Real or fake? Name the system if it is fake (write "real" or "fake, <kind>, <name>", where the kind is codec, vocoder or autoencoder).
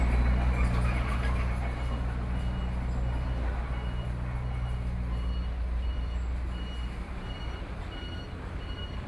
real